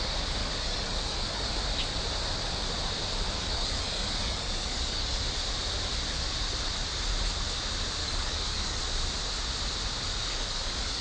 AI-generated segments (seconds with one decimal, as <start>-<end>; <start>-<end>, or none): 0.4-1.5; 3.4-5.2; 8.0-8.8; 10.2-11.0